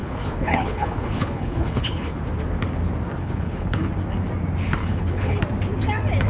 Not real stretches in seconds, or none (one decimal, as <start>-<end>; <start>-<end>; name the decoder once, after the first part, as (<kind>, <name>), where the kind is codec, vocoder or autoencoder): 0.0-2.2 (codec, HILCodec); 3.2-3.9; 4.8-5.4